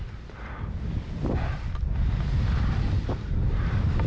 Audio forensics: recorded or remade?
remade